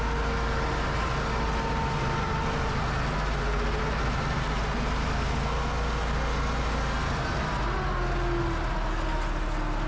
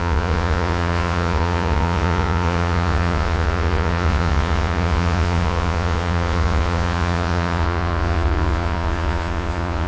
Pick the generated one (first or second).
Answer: second